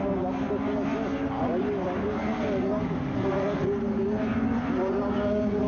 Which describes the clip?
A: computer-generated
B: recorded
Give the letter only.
B